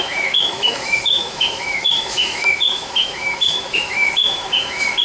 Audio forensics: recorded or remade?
remade